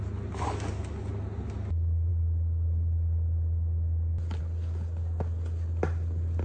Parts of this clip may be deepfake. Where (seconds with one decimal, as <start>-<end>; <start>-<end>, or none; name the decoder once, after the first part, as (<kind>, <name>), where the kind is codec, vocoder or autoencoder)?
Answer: none